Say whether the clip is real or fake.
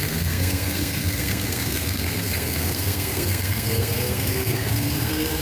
fake